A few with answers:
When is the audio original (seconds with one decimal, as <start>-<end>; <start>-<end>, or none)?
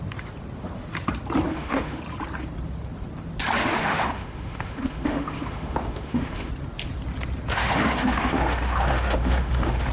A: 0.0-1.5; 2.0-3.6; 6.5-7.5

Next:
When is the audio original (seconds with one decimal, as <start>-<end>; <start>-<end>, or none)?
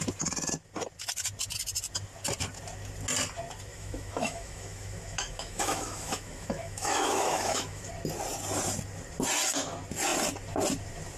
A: 0.0-3.7; 7.9-11.2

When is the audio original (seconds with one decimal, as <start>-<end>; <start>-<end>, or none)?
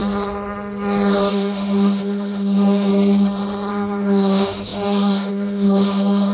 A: 0.0-1.3; 2.9-3.7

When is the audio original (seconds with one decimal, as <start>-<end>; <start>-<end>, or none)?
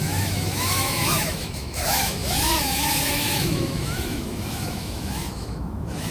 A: none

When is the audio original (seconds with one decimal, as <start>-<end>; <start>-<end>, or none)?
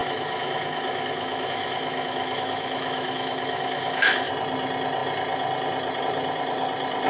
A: 4.3-7.1